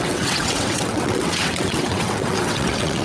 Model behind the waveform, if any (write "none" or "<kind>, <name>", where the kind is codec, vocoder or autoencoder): vocoder, WaveNeXt